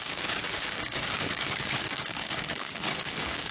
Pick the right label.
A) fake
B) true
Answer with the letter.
A